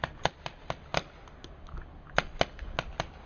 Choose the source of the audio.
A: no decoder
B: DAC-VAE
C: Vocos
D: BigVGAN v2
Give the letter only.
A